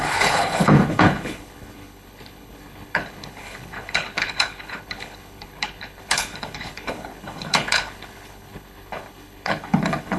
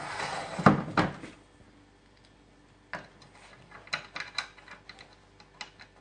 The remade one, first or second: first